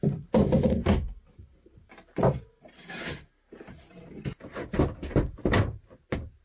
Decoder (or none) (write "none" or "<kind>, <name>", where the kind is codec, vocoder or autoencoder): none